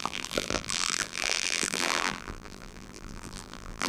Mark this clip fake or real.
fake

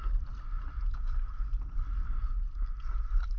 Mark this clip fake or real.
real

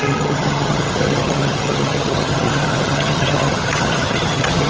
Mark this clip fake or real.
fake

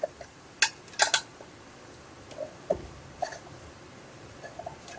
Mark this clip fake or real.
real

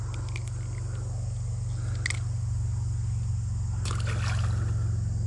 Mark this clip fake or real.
real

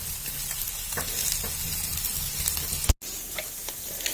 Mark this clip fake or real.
real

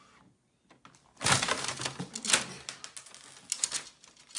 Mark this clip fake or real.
real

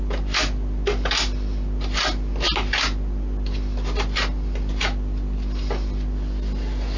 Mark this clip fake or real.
real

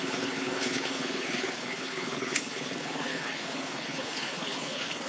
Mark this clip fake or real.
fake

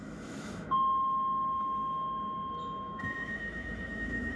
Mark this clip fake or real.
fake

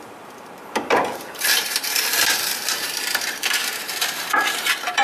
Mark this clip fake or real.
fake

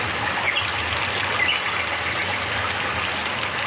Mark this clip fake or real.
real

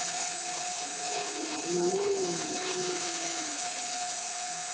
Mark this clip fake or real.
fake